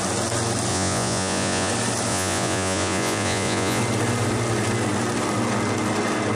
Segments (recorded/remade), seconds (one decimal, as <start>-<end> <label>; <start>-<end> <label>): 0.0-0.7 recorded; 0.7-1.7 remade; 1.7-2.1 recorded; 2.1-3.8 remade; 3.8-6.3 recorded